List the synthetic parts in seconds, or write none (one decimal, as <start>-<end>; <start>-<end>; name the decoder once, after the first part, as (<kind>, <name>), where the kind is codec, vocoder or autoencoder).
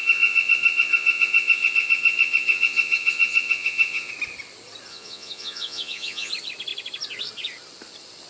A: 0.0-4.1 (vocoder, Vocos); 4.9-6.3